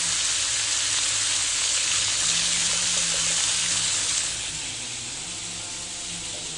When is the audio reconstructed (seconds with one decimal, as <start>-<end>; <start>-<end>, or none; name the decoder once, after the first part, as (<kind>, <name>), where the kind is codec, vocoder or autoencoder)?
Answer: 1.5-2.7 (codec, HILCodec); 3.6-4.5